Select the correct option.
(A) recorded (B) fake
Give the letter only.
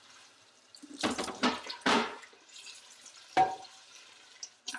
B